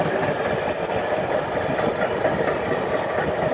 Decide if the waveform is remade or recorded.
recorded